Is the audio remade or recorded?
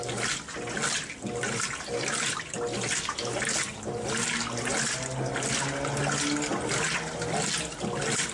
recorded